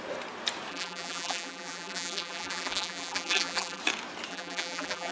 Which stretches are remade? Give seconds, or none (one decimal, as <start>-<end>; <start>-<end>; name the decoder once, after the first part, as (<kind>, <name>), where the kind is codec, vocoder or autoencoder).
0.7-3.8 (vocoder, BigVGAN v2); 4.3-5.1